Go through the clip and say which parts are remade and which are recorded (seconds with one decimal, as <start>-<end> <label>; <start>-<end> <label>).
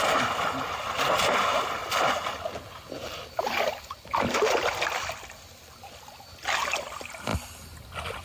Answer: 0.0-1.8 remade; 1.8-3.1 recorded; 3.1-7.3 remade; 7.3-8.2 recorded